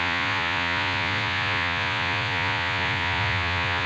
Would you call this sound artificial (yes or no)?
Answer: yes